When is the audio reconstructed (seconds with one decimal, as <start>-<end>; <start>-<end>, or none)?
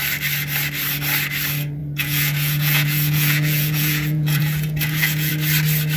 1.8-5.3